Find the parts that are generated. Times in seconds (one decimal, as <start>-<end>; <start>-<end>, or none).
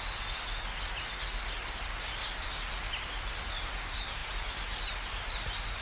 none